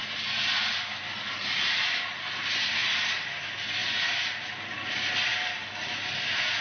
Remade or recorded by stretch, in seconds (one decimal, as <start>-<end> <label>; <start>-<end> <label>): 0.0-6.6 recorded

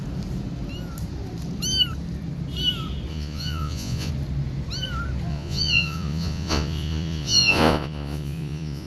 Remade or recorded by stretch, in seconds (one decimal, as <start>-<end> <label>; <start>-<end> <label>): 0.0-3.1 recorded; 3.1-4.1 remade; 4.1-5.3 recorded; 5.3-8.9 remade

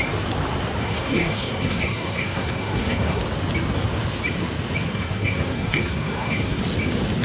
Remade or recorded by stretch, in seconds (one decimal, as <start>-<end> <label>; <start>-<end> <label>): 0.0-0.8 recorded; 0.8-3.2 remade; 3.2-4.9 recorded; 4.9-6.6 remade; 6.6-7.2 recorded